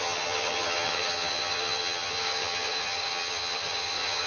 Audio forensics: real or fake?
fake